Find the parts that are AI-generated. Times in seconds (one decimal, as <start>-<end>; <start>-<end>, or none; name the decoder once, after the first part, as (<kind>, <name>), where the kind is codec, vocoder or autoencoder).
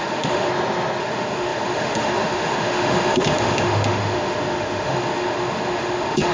0.0-0.5 (autoencoder, DAC-VAE); 1.0-6.3